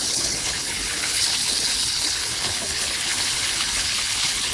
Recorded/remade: remade